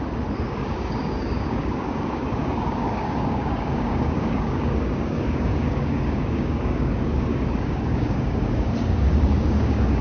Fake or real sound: fake